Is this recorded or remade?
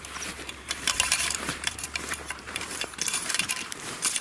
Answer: remade